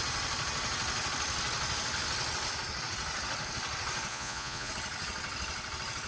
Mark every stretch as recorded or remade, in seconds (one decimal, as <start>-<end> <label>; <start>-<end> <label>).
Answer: 0.0-4.1 recorded; 4.1-4.7 remade; 4.7-6.1 recorded